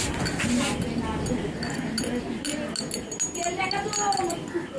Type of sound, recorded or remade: recorded